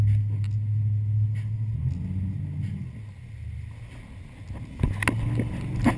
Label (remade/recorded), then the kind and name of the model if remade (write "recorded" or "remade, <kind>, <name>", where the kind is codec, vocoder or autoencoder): recorded